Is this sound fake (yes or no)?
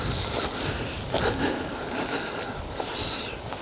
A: no